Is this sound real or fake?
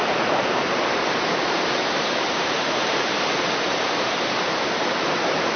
fake